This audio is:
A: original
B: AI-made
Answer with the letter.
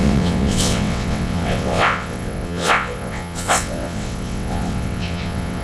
B